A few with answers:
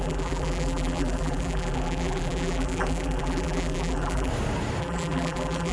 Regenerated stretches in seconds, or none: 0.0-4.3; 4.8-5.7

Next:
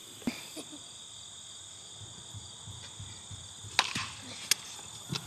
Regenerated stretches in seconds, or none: none

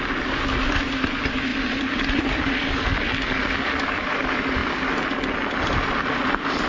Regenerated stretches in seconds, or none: 1.5-2.5

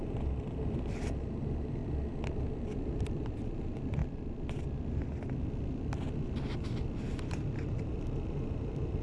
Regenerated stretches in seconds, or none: 0.0-1.8; 2.6-4.0; 7.2-9.0